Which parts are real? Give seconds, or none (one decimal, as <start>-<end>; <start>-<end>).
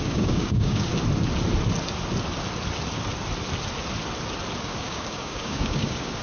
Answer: 0.9-4.6